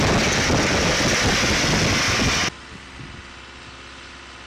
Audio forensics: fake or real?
real